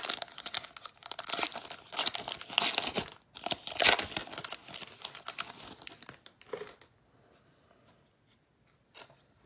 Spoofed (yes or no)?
no